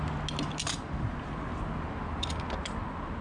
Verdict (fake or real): real